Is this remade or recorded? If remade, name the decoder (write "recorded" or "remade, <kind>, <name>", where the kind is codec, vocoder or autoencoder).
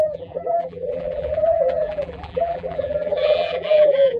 remade, vocoder, BigVGAN v2